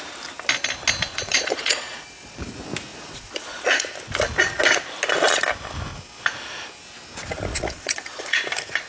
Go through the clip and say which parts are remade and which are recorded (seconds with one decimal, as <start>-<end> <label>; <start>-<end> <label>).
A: 0.0-1.1 recorded; 1.1-2.4 remade; 2.4-2.9 recorded; 2.9-3.8 remade; 3.8-7.5 recorded; 7.5-8.4 remade; 8.4-8.9 recorded